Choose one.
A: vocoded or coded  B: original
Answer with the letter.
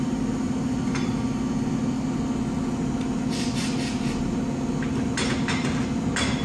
B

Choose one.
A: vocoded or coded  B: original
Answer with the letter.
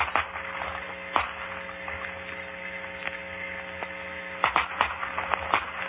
B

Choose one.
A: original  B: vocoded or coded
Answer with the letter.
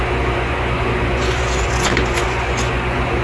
B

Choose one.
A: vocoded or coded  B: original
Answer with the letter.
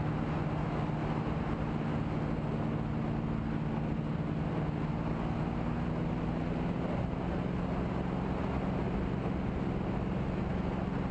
B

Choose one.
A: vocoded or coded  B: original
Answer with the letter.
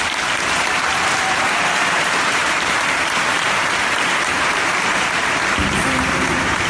A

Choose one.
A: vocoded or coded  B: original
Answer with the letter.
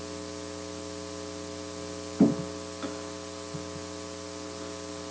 B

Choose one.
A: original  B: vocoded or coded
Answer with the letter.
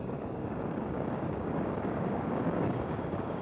B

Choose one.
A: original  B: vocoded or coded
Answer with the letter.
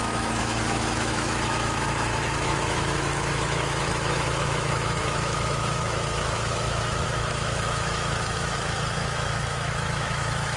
B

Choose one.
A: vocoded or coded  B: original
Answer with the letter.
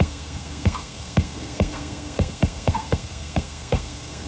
A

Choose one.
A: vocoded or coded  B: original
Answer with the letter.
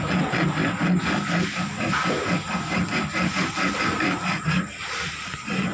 B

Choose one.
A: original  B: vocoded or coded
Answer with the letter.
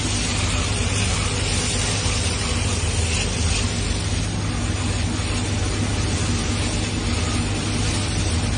A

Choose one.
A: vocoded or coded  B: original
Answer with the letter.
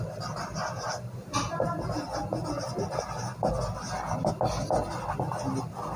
B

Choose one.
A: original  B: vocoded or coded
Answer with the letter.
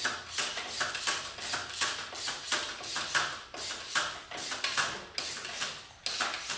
A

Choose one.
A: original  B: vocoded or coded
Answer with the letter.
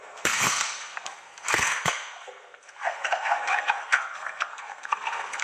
B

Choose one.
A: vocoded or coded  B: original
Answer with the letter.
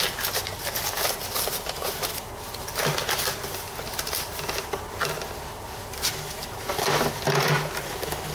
B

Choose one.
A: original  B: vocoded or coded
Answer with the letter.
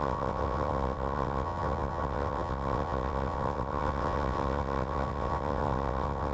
B